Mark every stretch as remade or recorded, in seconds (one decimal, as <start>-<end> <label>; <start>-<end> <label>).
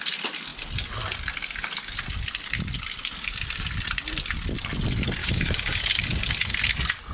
0.0-5.2 recorded; 5.2-6.0 remade; 6.0-7.1 recorded